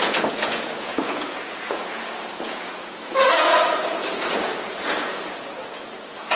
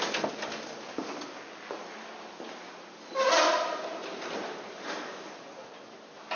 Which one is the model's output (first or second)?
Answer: first